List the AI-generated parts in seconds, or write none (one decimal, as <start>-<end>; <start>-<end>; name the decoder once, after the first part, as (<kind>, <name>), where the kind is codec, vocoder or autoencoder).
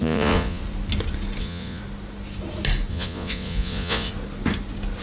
0.0-0.6 (vocoder, Vocos); 1.4-1.8; 2.9-4.1